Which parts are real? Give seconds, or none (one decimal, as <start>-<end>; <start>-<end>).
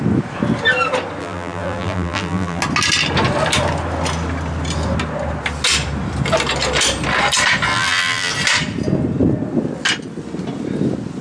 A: 0.0-1.2; 2.6-7.7; 8.3-11.2